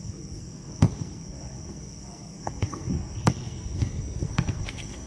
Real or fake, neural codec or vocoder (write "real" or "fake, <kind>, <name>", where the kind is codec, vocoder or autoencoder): fake, codec, SNAC